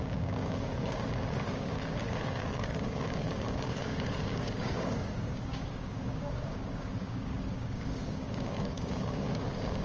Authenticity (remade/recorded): remade